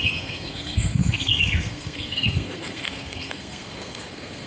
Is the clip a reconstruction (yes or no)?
yes